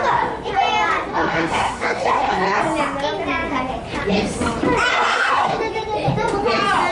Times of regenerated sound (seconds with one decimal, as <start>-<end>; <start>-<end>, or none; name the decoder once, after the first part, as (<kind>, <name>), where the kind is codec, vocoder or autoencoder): 1.1-2.6 (codec, SNAC); 4.9-5.6